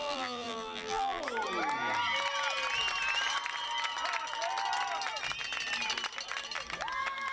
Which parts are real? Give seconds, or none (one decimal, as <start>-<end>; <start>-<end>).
1.2-7.3